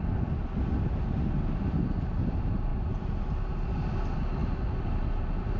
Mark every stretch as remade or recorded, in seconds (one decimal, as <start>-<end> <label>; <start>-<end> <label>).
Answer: 0.0-5.6 recorded